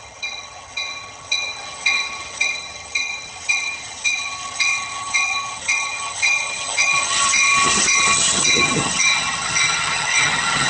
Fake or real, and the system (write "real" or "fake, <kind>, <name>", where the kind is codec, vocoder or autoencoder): fake, vocoder, HiFi-GAN